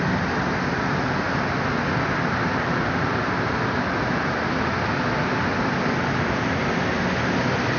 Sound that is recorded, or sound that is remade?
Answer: recorded